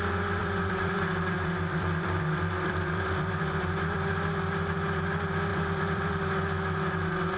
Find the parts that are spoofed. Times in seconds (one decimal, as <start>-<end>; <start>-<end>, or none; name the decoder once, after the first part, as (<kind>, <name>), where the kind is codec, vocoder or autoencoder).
0.4-4.1 (vocoder, BigVGAN v2); 5.5-6.1